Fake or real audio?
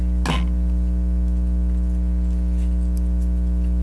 real